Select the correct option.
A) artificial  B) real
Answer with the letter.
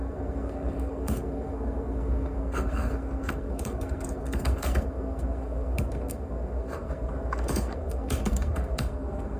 A